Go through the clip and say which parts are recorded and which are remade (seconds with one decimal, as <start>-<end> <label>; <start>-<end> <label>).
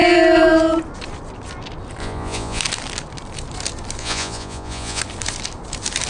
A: 0.0-2.0 recorded; 2.0-2.6 remade; 2.6-4.0 recorded; 4.0-5.0 remade; 5.0-6.1 recorded